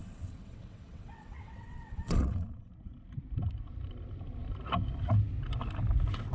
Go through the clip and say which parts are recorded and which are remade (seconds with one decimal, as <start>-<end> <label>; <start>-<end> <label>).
0.0-2.7 remade; 2.7-6.3 recorded